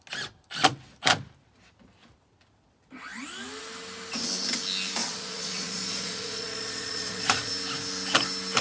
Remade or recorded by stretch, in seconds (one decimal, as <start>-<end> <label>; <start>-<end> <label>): 0.0-5.0 recorded; 5.0-7.5 remade; 7.5-8.6 recorded